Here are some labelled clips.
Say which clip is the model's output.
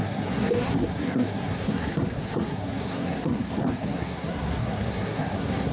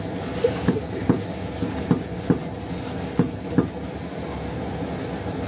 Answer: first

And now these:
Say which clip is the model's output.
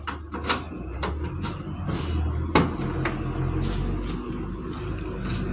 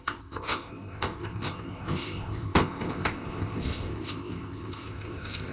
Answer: second